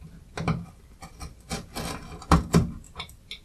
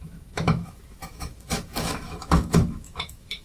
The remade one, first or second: second